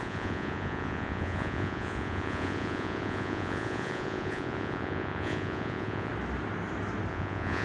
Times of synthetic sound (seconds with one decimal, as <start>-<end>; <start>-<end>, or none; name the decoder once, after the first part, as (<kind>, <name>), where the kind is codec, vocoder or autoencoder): 0.0-6.1 (vocoder, Vocos); 7.1-7.6